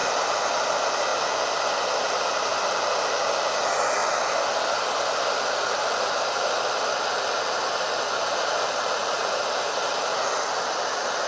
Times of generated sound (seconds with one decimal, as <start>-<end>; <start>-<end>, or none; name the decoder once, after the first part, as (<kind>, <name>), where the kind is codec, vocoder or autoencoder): none